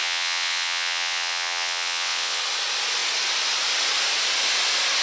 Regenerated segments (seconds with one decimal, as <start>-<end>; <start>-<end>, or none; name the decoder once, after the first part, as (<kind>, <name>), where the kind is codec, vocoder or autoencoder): 0.0-2.4 (vocoder, WaveNeXt)